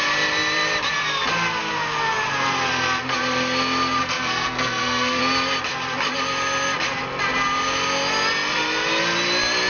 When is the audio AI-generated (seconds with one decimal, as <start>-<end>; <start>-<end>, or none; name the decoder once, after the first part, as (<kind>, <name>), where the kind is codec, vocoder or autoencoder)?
4.0-5.2 (codec, SNAC)